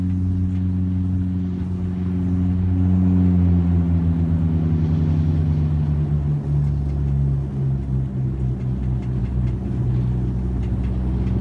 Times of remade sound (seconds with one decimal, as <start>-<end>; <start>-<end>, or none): 9.2-9.9

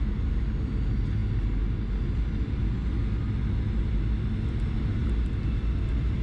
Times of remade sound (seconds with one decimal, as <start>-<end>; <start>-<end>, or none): none

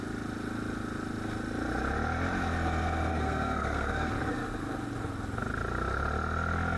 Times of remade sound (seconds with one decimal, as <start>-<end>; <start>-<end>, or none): 3.1-4.1

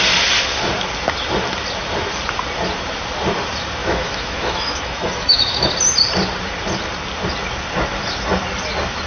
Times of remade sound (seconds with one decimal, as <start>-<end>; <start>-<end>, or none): 3.8-5.7

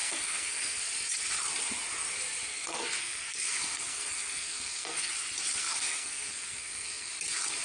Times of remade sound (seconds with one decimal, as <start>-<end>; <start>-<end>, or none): 0.0-0.8; 2.5-5.1; 5.6-7.1

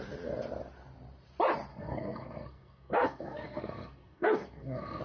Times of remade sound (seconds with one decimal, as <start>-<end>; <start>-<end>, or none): 1.7-5.0